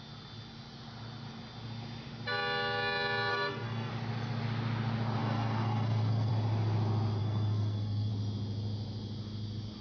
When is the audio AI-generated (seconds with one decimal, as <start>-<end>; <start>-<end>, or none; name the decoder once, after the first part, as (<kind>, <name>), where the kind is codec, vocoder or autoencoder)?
3.3-3.9 (codec, SNAC); 5.2-6.3; 7.2-8.1